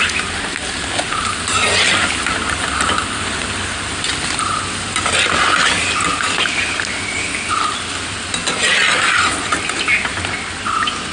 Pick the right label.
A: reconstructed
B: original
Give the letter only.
B